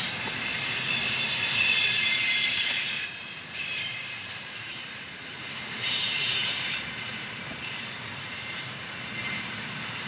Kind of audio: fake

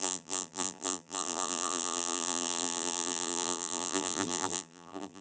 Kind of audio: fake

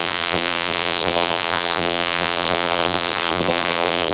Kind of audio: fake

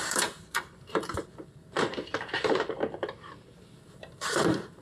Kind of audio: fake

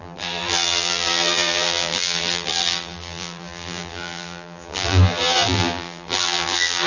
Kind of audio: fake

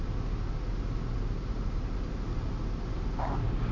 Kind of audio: real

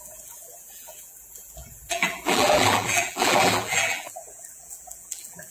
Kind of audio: fake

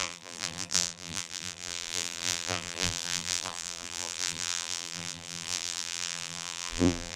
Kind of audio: fake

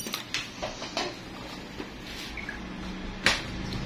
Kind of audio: real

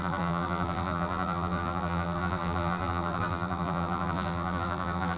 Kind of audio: fake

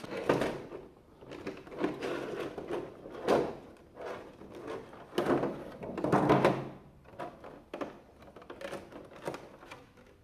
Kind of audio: real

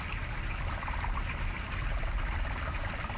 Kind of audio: real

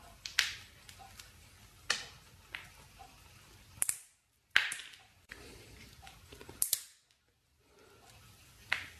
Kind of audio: real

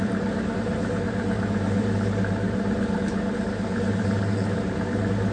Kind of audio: fake